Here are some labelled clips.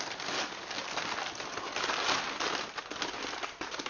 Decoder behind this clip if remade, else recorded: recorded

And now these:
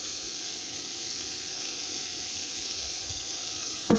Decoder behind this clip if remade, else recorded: remade, codec, SNAC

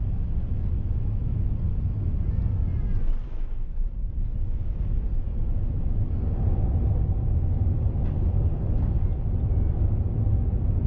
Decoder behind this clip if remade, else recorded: recorded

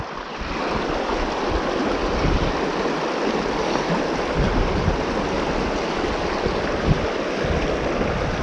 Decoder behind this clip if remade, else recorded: recorded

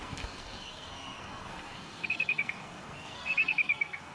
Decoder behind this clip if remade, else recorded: remade, codec, SNAC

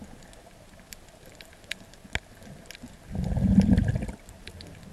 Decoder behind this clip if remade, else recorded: recorded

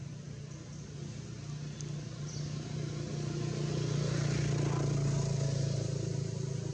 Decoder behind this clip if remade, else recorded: recorded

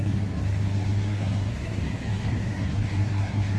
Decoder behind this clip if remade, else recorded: remade, codec, SNAC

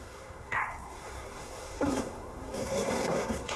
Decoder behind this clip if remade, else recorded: remade, codec, SNAC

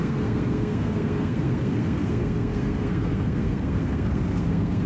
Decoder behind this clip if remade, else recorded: remade, codec, SNAC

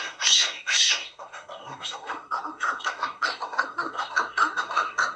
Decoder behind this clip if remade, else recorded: remade, codec, SNAC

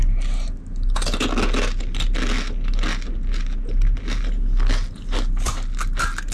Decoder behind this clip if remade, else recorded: recorded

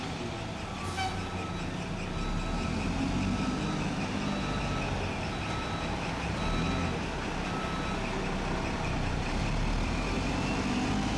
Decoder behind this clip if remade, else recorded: recorded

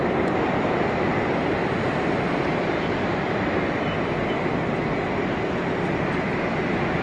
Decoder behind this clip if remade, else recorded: recorded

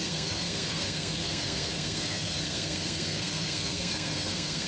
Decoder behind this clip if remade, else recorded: remade, codec, SNAC